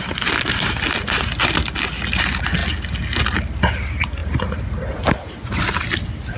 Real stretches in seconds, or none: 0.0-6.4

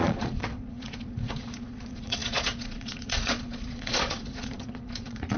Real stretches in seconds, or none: none

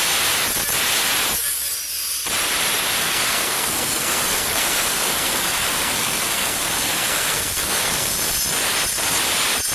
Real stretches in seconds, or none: 0.0-3.0; 8.1-9.7

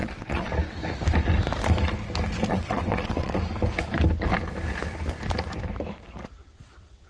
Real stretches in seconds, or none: 0.5-2.5; 3.4-6.4

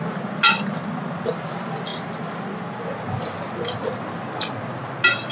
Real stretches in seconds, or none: 0.0-5.3